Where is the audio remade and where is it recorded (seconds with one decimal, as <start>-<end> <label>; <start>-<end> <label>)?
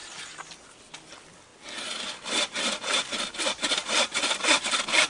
0.0-5.1 recorded